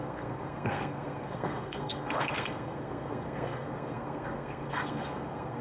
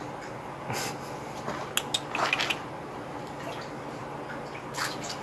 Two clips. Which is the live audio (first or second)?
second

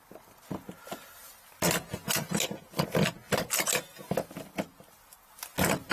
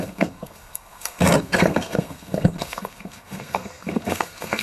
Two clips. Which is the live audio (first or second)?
first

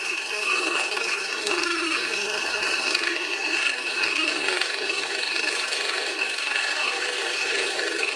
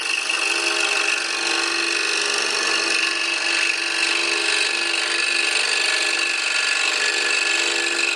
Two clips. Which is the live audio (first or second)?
second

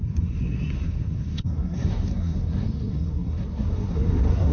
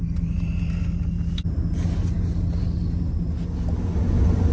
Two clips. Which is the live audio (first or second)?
second